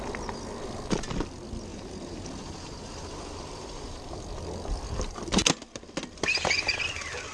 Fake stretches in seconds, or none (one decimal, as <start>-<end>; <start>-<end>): 1.7-4.2